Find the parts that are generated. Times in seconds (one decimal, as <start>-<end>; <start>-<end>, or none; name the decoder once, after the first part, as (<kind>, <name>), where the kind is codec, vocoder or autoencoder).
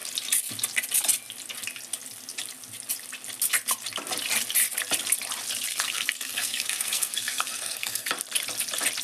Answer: 5.7-8.1 (codec, SNAC)